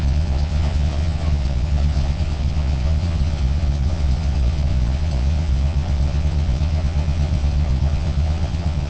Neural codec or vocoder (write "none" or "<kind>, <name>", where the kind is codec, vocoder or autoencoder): vocoder, Vocos